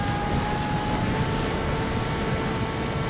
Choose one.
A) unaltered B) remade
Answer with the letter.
A